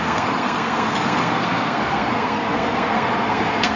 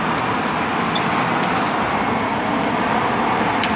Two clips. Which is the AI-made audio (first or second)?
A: first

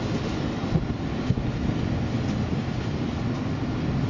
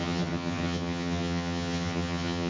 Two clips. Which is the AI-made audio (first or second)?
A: second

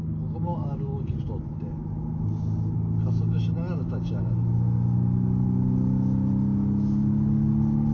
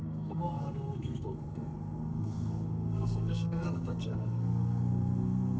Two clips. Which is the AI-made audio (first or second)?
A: second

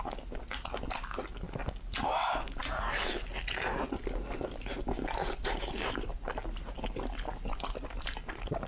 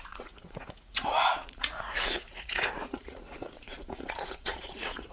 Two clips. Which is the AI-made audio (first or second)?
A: second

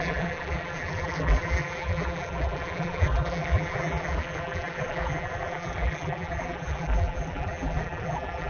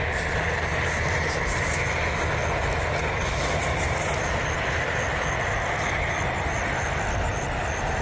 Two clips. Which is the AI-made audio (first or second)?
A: first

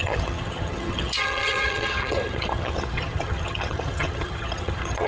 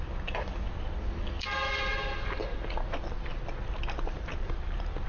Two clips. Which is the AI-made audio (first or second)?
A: first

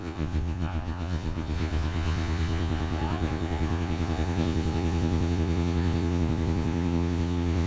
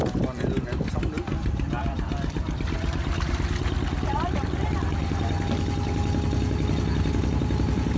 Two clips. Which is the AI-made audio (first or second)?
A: first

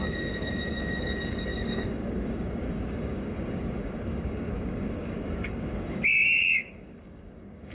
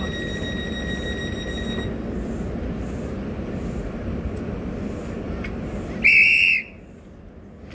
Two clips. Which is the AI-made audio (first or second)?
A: first